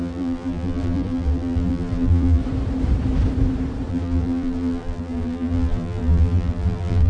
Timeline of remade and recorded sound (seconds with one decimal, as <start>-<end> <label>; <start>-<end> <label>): 0.0-2.4 remade; 2.4-3.9 recorded; 3.9-7.1 remade